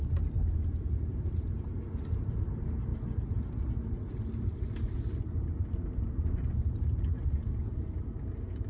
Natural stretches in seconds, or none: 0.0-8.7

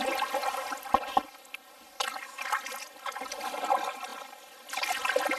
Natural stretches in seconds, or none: 0.0-5.4

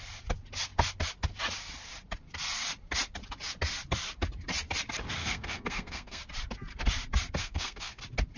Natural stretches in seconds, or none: 0.0-5.2; 6.2-7.4; 8.0-8.4

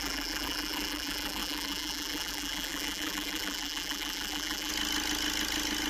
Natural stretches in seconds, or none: 4.7-5.9

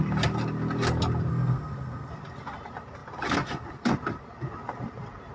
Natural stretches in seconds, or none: 0.0-1.3; 2.1-5.3

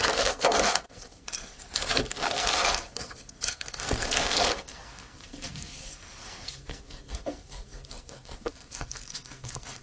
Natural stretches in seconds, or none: none

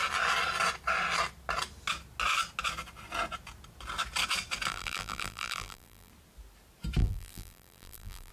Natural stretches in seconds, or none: 0.0-4.7; 6.1-7.0

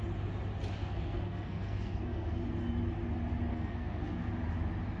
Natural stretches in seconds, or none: 0.0-0.8; 2.4-3.5; 4.3-5.0